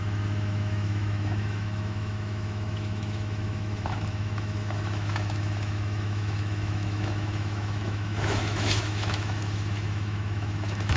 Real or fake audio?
fake